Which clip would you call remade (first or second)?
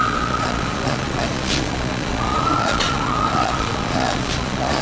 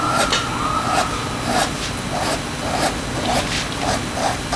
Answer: first